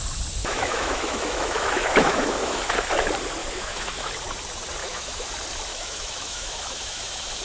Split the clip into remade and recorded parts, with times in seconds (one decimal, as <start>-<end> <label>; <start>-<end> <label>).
0.0-0.4 recorded; 0.4-2.6 remade; 2.6-3.4 recorded; 3.4-4.1 remade; 4.1-4.8 recorded; 4.8-5.3 remade; 5.3-5.7 recorded; 5.7-7.4 remade